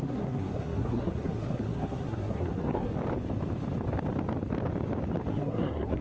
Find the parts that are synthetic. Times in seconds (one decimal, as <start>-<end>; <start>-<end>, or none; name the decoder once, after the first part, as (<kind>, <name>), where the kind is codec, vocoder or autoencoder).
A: 0.0-2.9 (codec, SNAC); 5.3-6.0